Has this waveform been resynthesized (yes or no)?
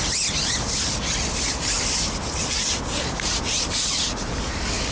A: no